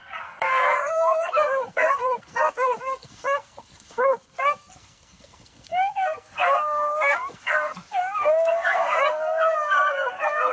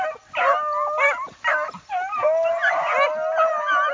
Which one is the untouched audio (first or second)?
second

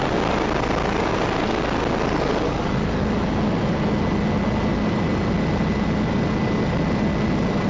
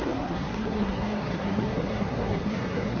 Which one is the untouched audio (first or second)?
first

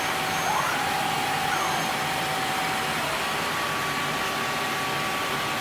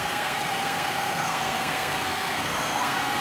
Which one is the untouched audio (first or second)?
first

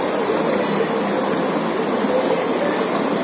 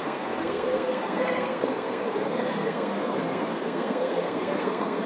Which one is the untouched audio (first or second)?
first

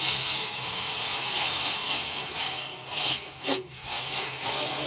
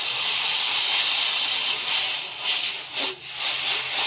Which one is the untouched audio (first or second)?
second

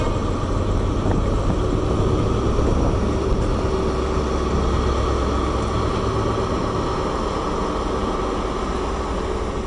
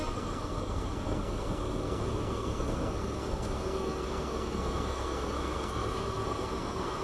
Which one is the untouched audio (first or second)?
first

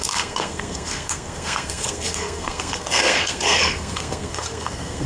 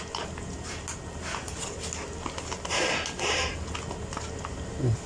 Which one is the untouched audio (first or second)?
second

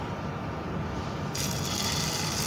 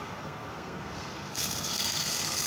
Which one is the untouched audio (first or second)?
first